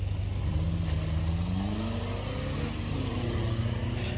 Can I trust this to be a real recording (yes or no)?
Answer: yes